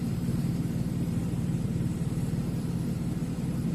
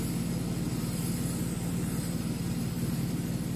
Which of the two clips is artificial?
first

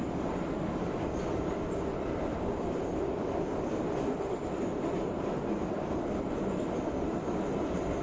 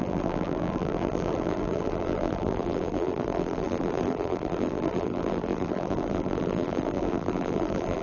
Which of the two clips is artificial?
second